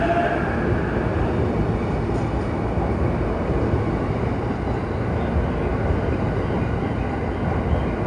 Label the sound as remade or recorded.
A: recorded